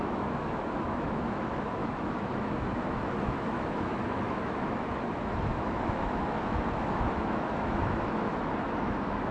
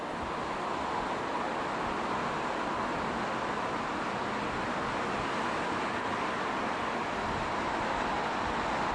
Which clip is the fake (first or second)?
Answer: first